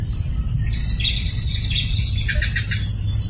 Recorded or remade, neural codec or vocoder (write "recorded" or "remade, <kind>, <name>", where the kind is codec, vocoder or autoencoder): recorded